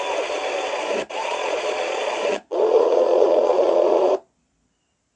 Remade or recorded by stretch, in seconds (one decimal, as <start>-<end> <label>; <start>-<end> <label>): 0.0-1.2 recorded; 1.2-4.1 remade; 4.1-5.2 recorded